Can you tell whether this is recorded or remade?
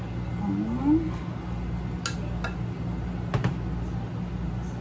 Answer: recorded